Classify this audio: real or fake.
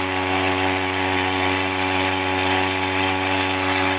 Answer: real